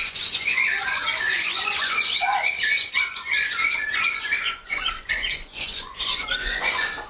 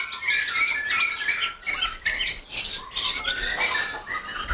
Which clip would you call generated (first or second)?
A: first